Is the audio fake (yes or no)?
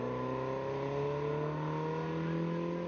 no